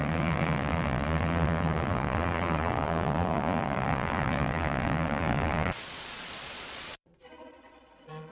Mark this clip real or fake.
fake